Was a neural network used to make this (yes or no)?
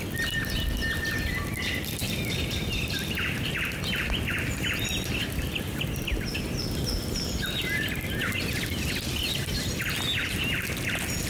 no